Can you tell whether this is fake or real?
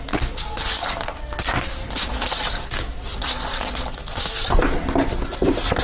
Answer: real